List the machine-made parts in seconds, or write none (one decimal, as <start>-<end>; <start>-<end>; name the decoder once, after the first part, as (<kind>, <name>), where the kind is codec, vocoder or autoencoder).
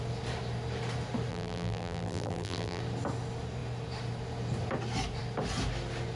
1.3-2.8 (vocoder, BigVGAN v2)